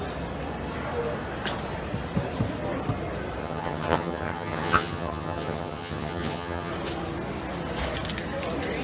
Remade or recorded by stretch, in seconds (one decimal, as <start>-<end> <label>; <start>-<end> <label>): 0.0-3.4 recorded; 3.4-6.7 remade; 6.7-8.8 recorded